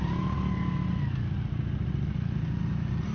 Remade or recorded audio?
recorded